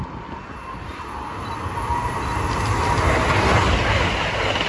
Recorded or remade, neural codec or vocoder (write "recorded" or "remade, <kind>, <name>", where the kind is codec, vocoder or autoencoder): recorded